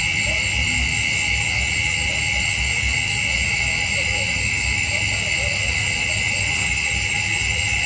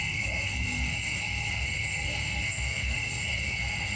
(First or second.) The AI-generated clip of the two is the second